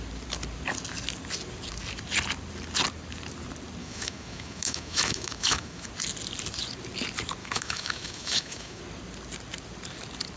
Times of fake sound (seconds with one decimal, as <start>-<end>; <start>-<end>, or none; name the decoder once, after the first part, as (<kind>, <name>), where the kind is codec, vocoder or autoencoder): 3.8-5.9 (autoencoder, DAC-VAE); 7.4-8.8